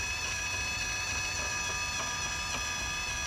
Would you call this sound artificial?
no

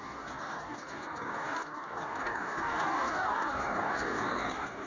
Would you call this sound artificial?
yes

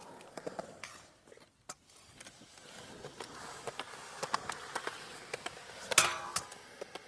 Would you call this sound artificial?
no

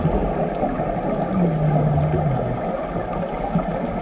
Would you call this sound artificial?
no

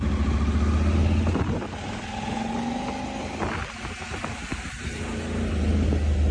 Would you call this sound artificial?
no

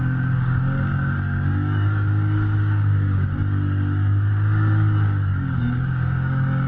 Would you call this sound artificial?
yes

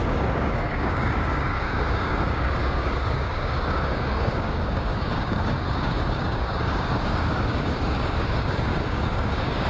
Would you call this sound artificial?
yes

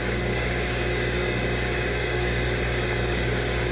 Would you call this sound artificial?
yes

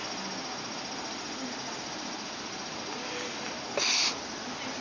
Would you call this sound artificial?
no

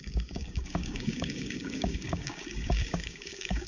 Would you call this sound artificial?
yes